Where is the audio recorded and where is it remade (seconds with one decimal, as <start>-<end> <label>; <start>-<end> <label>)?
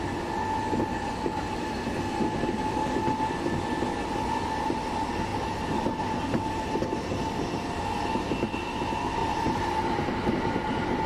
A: 0.0-5.3 recorded; 5.3-7.8 remade; 7.8-9.2 recorded; 9.2-10.5 remade; 10.5-11.1 recorded